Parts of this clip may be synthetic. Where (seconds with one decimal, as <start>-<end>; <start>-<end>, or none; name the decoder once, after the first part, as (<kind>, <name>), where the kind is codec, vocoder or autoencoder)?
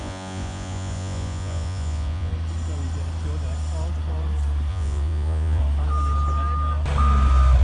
0.0-2.3 (vocoder, Vocos); 4.7-5.6